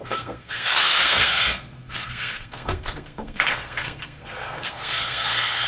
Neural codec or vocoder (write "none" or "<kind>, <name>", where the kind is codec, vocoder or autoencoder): codec, SNAC